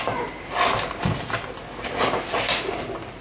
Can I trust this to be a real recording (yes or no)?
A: yes